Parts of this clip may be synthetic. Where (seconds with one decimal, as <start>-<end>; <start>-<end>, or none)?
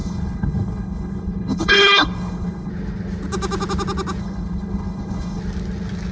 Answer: 0.0-2.7; 4.2-5.4